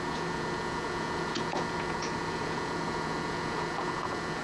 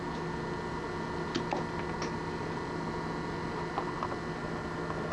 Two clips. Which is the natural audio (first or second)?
second